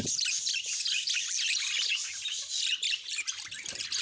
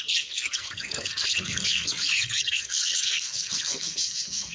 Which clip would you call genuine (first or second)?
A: first